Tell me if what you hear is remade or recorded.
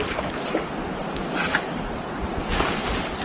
recorded